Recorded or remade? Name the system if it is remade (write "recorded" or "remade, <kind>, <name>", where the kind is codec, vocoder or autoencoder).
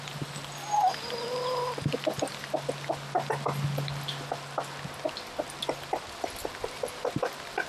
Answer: recorded